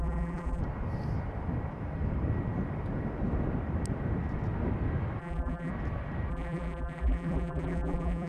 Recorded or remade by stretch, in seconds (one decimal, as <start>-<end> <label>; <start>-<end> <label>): 0.0-0.6 remade; 0.6-5.2 recorded; 5.2-5.7 remade; 5.7-6.3 recorded; 6.3-8.3 remade